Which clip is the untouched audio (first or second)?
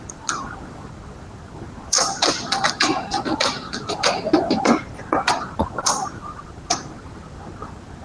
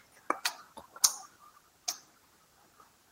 second